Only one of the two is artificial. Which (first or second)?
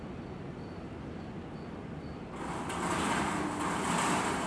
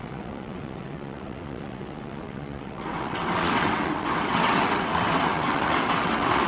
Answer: second